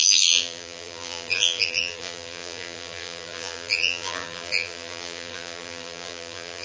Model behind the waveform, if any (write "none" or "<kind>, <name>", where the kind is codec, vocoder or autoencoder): vocoder, BigVGAN v2